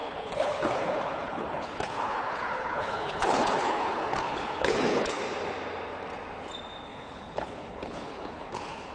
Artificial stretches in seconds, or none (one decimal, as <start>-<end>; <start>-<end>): 0.0-5.2; 6.9-8.9